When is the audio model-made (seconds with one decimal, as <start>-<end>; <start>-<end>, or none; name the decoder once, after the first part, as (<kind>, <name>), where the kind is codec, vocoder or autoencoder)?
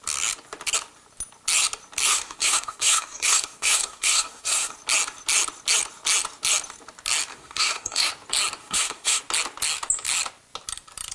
2.1-4.7 (codec, SNAC); 7.3-8.1; 8.6-9.2